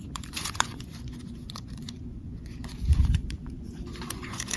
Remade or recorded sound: remade